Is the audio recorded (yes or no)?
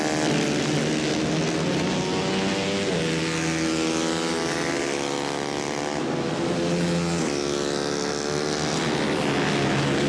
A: yes